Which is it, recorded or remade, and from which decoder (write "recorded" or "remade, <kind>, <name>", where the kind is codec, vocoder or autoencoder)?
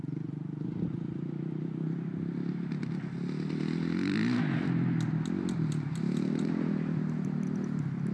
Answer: recorded